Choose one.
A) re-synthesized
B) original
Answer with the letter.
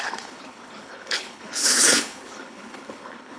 A